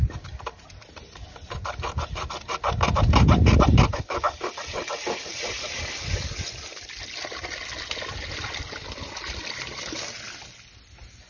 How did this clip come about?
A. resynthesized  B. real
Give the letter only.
B